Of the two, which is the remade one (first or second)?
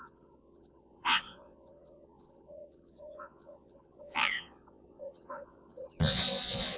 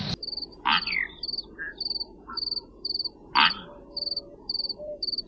first